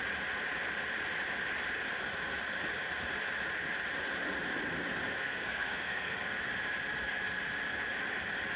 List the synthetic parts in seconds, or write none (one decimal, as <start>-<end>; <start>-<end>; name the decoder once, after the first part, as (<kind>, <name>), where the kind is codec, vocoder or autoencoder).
5.2-6.4 (codec, SNAC)